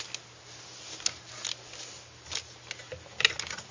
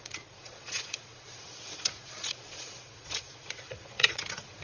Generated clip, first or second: second